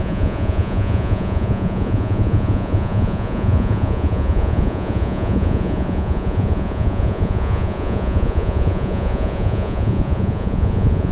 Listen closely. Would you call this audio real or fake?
fake